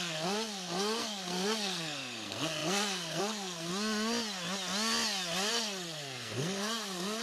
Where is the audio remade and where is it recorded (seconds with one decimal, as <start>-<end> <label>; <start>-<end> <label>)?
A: 0.0-3.7 remade; 3.7-5.5 recorded; 5.5-7.2 remade